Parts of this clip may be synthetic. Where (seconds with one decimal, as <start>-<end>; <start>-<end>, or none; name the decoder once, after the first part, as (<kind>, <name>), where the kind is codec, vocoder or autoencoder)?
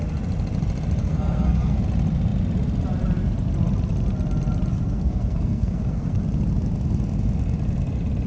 1.0-1.8 (codec, SNAC); 4.7-6.2